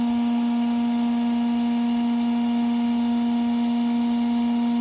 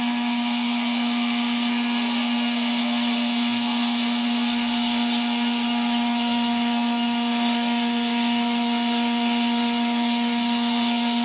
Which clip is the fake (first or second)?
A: second